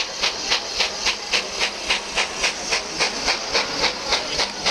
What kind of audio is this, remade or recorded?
recorded